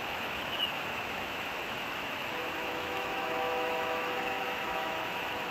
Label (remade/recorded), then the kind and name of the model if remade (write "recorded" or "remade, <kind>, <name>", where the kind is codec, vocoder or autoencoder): remade, autoencoder, DAC-VAE